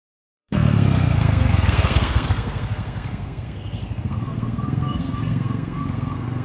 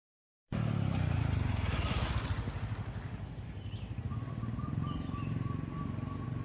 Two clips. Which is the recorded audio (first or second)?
second